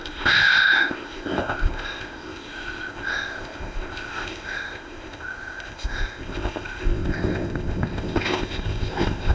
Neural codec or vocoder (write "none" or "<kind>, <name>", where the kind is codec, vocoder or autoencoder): codec, ZipCodec